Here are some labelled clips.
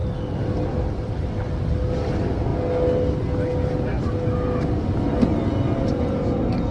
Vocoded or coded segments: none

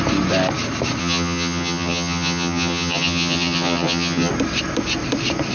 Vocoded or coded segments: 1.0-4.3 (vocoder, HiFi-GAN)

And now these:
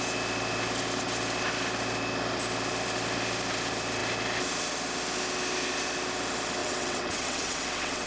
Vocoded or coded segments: 6.6-8.1 (vocoder, WaveNeXt)

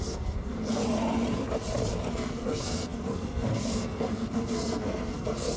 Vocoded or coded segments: 0.0-0.8 (codec, SNAC); 2.1-5.6